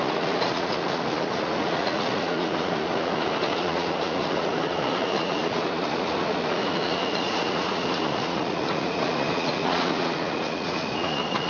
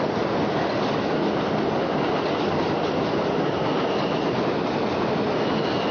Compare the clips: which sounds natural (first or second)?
second